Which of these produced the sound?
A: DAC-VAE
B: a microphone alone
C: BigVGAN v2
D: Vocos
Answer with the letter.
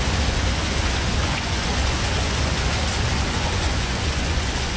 D